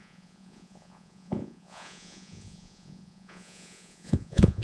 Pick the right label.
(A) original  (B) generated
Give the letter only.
B